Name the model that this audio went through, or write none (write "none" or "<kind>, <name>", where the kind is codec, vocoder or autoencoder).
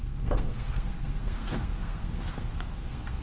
codec, SNAC